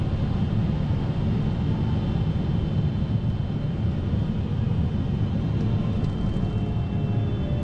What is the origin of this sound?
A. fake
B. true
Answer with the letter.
B